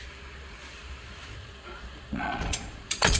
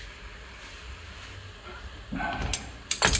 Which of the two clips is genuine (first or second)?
second